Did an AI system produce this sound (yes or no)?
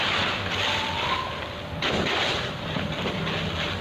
no